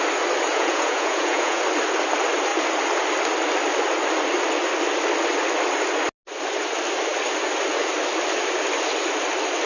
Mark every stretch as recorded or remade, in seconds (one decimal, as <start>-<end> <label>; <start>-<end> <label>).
0.0-0.5 recorded; 0.5-1.6 remade; 1.6-9.7 recorded